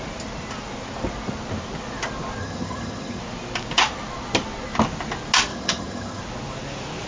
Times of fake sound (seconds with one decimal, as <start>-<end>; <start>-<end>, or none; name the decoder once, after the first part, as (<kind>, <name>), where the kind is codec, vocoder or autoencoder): 2.4-3.2 (vocoder, HiFi-GAN); 5.5-6.2